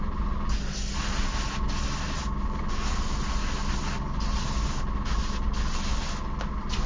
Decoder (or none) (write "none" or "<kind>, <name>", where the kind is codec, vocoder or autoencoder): none